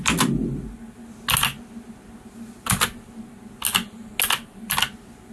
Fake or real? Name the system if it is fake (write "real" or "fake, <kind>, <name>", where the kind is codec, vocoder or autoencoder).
real